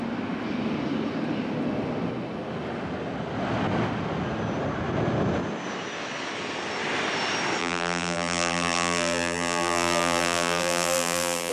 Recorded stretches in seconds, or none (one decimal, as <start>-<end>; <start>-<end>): 0.0-7.6